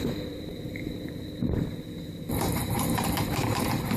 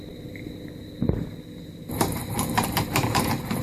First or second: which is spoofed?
first